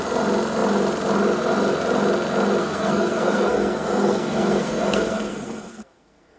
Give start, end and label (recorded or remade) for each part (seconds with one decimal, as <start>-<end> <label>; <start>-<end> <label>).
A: 0.0-2.6 recorded; 2.6-6.4 remade